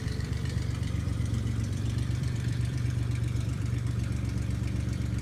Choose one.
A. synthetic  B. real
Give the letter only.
A